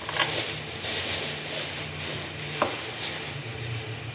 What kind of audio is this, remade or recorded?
recorded